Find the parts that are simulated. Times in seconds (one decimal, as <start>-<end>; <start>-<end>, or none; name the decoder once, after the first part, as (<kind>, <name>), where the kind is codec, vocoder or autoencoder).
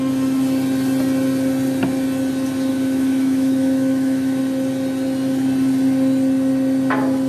2.7-4.4 (autoencoder, DAC-VAE)